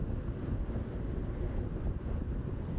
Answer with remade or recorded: recorded